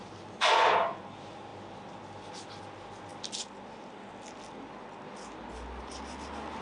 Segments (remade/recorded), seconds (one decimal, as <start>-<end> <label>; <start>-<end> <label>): 0.0-6.6 recorded